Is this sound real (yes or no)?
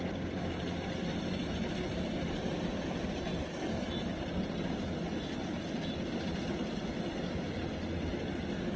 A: yes